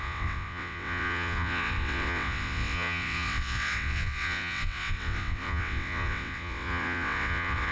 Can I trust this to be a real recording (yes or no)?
no